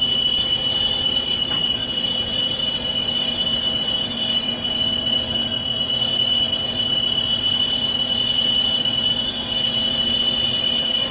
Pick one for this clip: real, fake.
fake